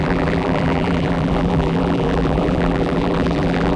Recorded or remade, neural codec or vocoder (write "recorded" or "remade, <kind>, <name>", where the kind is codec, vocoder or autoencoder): remade, vocoder, BigVGAN v2